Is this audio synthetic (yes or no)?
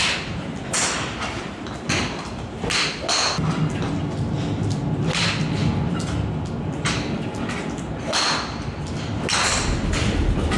no